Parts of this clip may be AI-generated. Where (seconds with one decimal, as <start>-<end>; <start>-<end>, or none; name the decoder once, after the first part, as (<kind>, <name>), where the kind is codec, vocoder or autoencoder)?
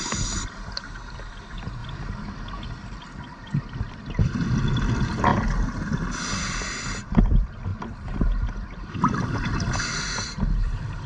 0.0-1.8 (vocoder, BigVGAN v2); 4.2-5.3; 6.3-11.1